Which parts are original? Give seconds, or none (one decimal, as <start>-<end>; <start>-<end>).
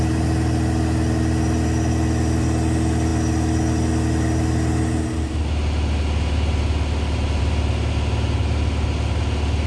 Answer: 0.0-9.7